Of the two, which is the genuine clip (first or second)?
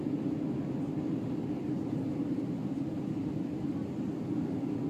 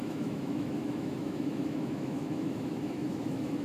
first